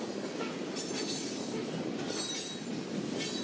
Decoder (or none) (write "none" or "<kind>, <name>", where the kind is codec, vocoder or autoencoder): none